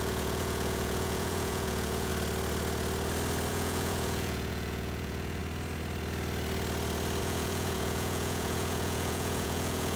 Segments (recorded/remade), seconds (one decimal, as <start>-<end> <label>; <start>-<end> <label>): 0.0-2.1 remade; 2.1-3.5 recorded; 3.5-5.4 remade; 5.4-7.2 recorded; 7.2-10.0 remade